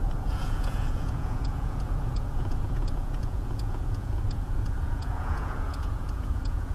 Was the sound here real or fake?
fake